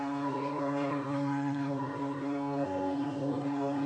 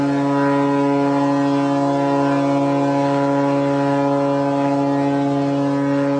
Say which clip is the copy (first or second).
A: first